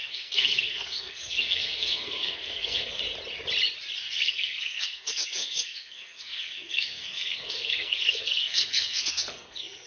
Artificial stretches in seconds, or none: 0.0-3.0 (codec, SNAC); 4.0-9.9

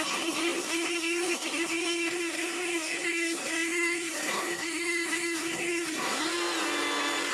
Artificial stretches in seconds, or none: 0.0-6.3 (codec, SNAC)

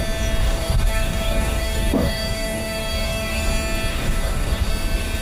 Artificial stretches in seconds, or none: 0.4-3.5 (codec, DAC); 3.9-4.7

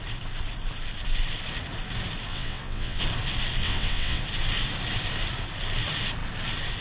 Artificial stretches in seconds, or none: 2.3-3.0 (vocoder, WaveNeXt); 3.6-4.2

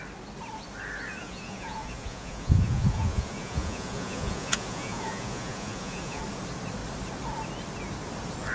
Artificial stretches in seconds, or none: 1.2-6.2 (vocoder, Vocos)

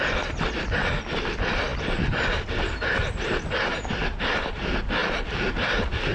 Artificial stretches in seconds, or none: none

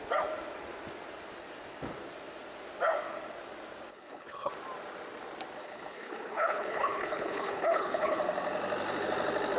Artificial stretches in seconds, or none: 3.9-4.5 (codec, HILCodec); 5.6-8.2